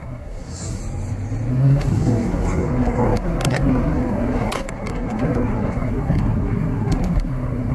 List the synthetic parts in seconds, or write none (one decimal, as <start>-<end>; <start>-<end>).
0.0-0.8; 1.5-7.7